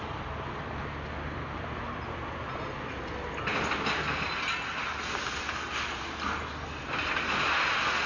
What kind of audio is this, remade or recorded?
recorded